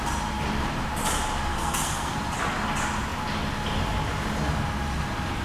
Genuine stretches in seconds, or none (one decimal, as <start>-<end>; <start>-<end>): 0.0-1.5; 2.2-5.4